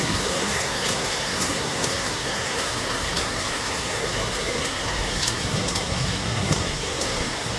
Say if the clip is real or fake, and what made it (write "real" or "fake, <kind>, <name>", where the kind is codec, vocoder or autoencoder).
fake, codec, SNAC